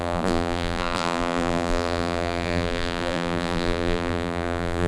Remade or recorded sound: remade